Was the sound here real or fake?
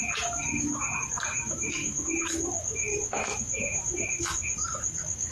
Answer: fake